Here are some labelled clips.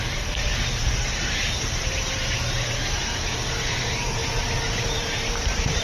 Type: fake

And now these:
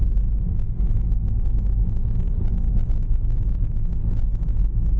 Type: real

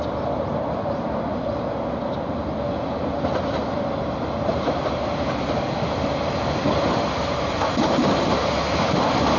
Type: real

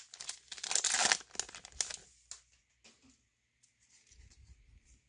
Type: real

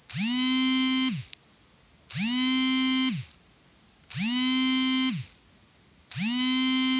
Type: real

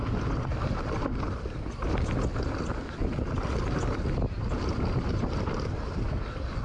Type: real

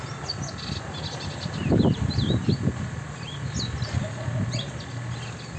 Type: real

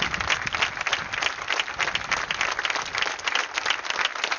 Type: real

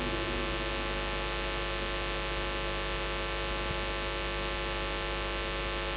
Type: real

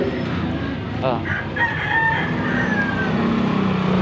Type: real